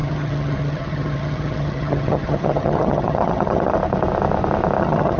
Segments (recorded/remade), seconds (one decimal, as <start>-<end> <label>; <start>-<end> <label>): 0.0-3.7 remade; 3.7-4.8 recorded; 4.8-5.2 remade